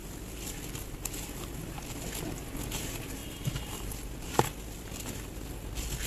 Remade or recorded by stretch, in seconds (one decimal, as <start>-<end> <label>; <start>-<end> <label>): 0.0-3.2 recorded; 3.2-4.5 remade; 4.5-6.1 recorded

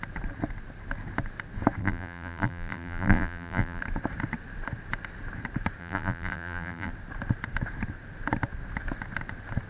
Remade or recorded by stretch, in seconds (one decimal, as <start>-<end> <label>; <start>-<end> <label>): 0.0-1.8 recorded; 1.8-3.8 remade; 3.8-5.8 recorded; 5.8-6.9 remade; 6.9-9.7 recorded

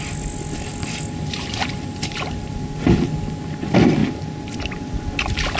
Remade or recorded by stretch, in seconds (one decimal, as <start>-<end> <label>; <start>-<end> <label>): 0.0-0.7 recorded; 0.7-2.6 remade; 2.6-5.6 recorded